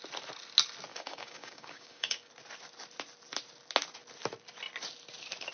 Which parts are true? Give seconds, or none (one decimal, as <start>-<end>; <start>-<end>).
0.0-0.9; 2.3-5.5